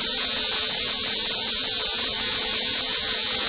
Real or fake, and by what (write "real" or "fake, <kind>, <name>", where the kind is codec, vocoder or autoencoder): fake, vocoder, Vocos